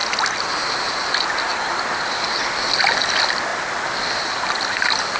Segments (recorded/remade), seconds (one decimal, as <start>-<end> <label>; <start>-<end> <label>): 0.0-1.1 recorded; 1.1-5.2 remade